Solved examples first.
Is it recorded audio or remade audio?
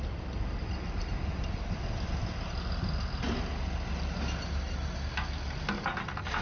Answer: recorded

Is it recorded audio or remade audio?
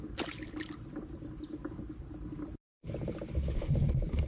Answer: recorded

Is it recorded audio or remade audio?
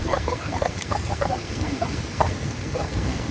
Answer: remade